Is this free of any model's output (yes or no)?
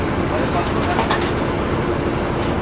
yes